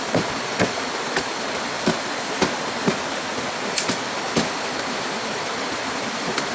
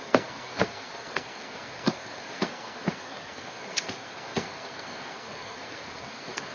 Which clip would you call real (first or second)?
first